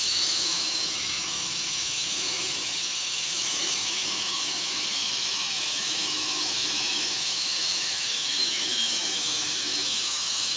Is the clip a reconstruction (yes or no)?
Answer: yes